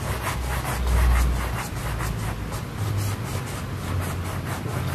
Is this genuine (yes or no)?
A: yes